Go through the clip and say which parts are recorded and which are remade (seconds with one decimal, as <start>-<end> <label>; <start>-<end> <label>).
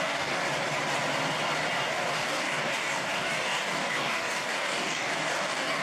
0.0-0.4 remade; 0.4-1.9 recorded; 1.9-5.8 remade